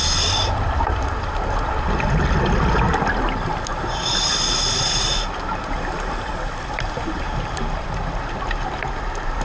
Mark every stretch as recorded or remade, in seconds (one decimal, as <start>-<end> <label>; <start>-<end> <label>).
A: 0.0-9.4 recorded